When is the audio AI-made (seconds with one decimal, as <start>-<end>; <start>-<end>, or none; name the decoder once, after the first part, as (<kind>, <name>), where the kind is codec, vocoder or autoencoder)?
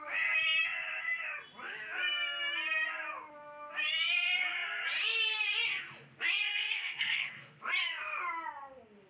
6.5-7.6 (codec, SNAC)